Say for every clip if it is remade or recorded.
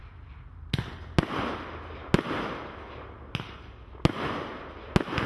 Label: recorded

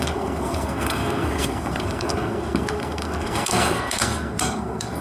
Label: remade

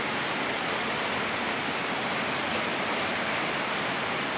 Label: recorded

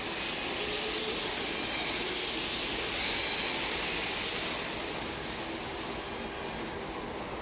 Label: recorded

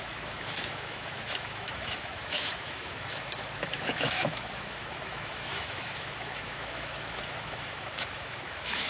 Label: remade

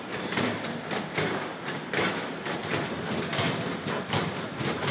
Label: remade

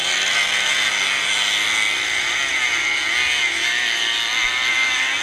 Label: recorded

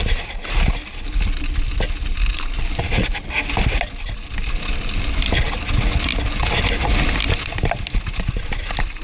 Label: recorded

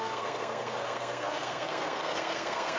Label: remade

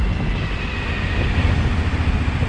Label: recorded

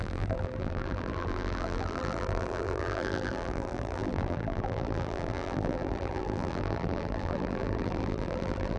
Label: remade